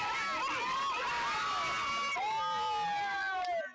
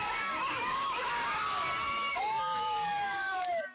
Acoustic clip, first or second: first